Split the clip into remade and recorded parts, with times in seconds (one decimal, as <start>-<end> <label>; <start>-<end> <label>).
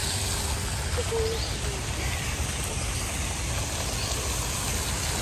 0.0-5.2 recorded